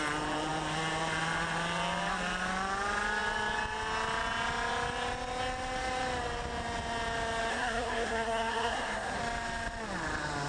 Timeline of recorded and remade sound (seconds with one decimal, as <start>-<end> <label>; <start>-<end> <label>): 0.0-7.5 recorded; 7.5-9.2 remade; 9.2-10.5 recorded